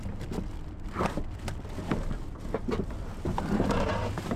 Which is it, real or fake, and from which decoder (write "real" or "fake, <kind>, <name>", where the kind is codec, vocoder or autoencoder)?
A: fake, vocoder, BigVGAN v2